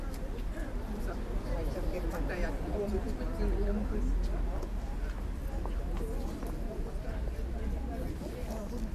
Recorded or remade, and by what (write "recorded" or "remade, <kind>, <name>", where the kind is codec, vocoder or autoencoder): recorded